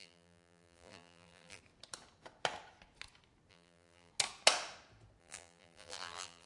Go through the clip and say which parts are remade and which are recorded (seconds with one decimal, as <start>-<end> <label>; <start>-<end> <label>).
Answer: 0.0-1.6 remade; 1.6-3.5 recorded; 3.5-4.1 remade; 4.1-5.2 recorded; 5.2-6.5 remade